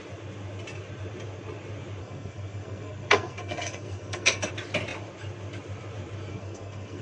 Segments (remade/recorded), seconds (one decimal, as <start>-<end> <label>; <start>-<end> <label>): 0.0-2.0 recorded; 2.0-4.5 remade; 4.5-6.3 recorded; 6.3-7.0 remade